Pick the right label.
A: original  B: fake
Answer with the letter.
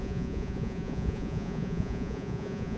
B